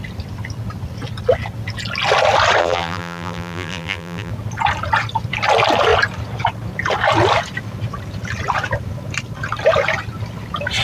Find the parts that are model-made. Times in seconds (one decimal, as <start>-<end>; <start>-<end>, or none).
2.6-4.3